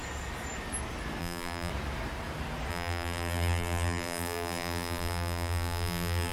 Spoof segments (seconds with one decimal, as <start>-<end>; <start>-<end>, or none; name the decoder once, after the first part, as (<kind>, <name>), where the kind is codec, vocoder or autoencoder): 1.2-1.7 (vocoder, BigVGAN v2); 2.7-6.3